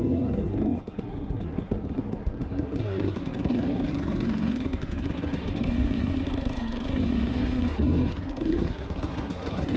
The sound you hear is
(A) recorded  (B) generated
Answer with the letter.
B